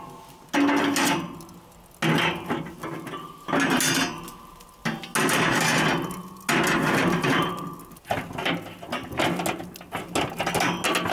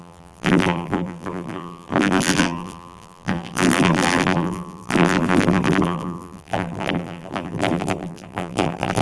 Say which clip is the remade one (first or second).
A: second